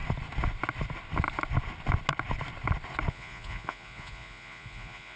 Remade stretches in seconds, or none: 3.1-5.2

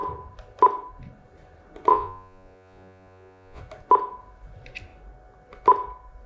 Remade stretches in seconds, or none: 1.9-3.6

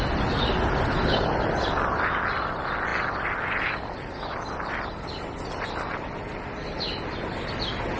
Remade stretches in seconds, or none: none